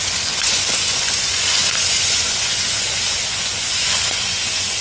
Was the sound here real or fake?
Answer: fake